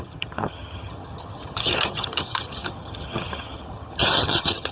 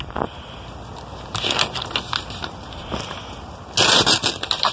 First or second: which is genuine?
second